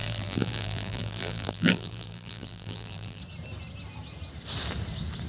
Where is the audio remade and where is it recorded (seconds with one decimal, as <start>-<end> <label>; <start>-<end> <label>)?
0.0-3.2 remade; 3.2-5.3 recorded